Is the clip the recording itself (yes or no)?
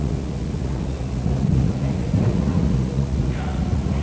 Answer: no